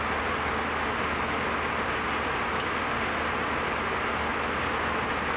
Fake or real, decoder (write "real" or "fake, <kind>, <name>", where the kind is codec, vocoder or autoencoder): real